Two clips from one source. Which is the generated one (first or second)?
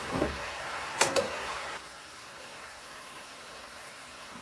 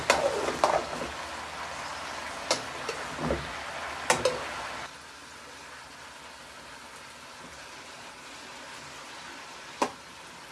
first